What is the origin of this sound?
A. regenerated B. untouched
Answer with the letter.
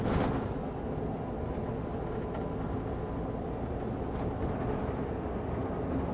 B